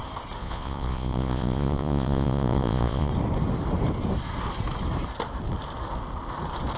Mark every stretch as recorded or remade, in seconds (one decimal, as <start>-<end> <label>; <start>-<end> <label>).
0.0-0.4 recorded; 0.4-3.1 remade; 3.1-6.8 recorded